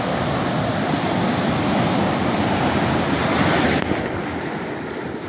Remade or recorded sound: recorded